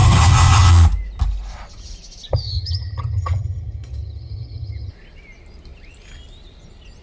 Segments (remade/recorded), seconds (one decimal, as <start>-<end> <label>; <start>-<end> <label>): 0.0-0.7 remade; 0.7-2.3 recorded; 2.3-4.9 remade; 4.9-7.0 recorded